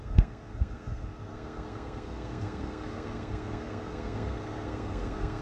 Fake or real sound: fake